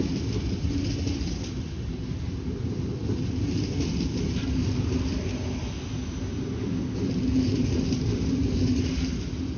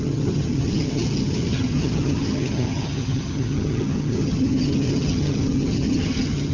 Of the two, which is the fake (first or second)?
second